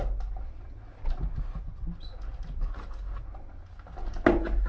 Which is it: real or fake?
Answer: real